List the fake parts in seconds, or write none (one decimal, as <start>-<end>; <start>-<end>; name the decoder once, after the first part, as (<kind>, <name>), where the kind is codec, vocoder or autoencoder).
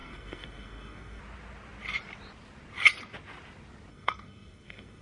0.0-1.2 (codec, SNAC); 3.9-5.0